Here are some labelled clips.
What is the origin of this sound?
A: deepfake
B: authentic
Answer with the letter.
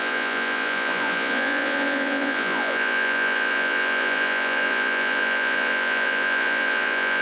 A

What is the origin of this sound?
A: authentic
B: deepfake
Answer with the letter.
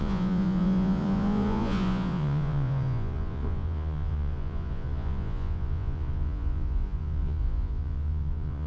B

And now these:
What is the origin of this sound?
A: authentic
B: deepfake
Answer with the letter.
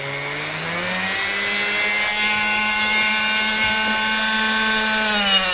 A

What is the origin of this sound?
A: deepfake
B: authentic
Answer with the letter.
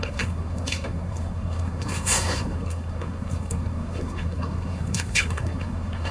A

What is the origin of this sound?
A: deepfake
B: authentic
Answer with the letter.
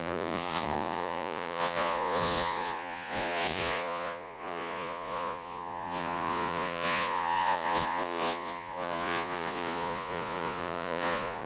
A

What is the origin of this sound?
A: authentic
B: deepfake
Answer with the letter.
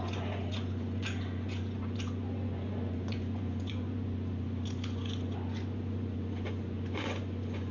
B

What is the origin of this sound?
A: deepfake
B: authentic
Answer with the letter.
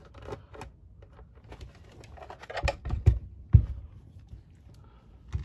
B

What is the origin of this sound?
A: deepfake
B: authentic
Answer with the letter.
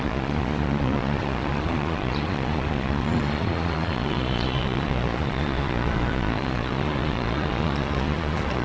A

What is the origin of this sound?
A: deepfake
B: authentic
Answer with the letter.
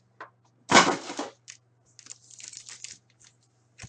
B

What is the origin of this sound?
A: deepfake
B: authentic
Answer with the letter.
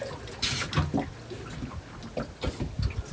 B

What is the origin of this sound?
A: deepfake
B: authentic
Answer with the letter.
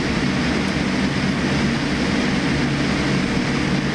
B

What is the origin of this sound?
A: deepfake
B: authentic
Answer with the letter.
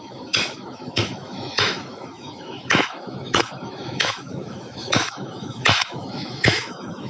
A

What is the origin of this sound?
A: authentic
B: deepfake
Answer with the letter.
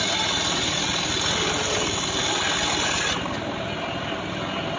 A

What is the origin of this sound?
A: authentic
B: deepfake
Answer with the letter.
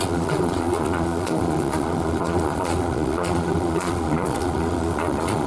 B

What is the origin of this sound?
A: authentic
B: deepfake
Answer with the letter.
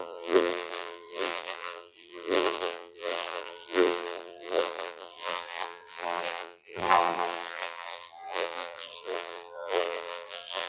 B